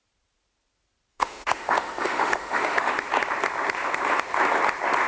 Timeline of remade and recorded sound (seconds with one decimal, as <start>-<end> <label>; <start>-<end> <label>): 0.0-1.1 recorded; 1.1-2.9 remade; 2.9-5.1 recorded